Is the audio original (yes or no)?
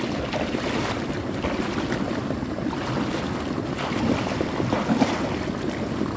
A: yes